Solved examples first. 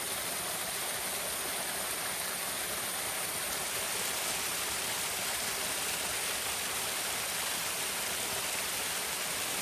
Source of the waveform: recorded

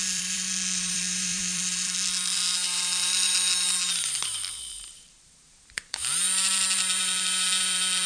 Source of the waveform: remade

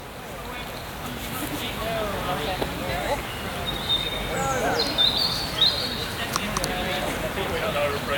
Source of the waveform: recorded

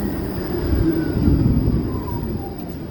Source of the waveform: remade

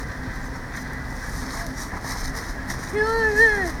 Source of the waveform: recorded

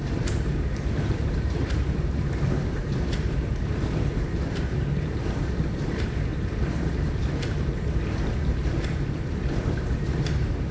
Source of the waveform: remade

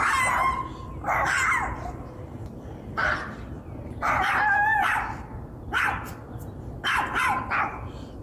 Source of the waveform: recorded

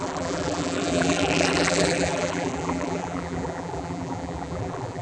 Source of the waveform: remade